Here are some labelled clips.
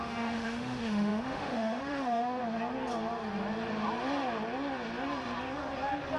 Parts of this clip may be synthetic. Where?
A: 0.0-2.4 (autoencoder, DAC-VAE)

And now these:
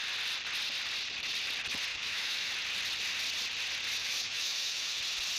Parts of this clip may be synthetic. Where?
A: 1.9-2.5 (autoencoder, DAC-VAE); 4.0-5.0

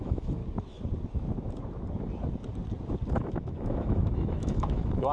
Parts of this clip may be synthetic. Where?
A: 0.0-0.4 (autoencoder, DAC-VAE); 3.1-5.1

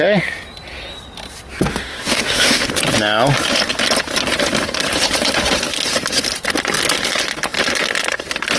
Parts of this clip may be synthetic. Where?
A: 1.7-2.7 (autoencoder, DAC-VAE)

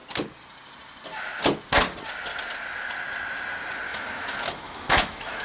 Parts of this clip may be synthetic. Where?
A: 3.9-5.4 (autoencoder, DAC-VAE)